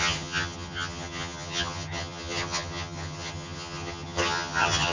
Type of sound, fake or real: fake